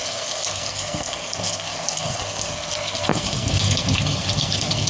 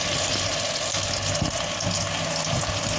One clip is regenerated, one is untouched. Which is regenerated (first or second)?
first